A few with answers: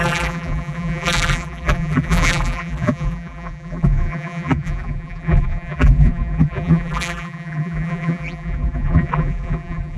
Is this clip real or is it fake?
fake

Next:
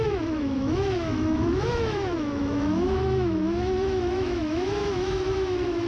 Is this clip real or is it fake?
fake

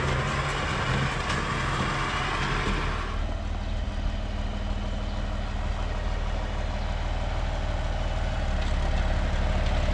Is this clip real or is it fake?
real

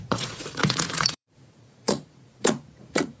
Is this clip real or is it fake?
fake